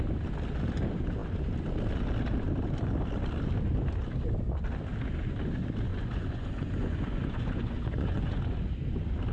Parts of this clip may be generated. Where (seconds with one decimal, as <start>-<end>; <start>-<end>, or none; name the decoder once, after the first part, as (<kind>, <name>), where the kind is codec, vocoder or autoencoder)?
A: 5.9-8.4 (vocoder, Vocos)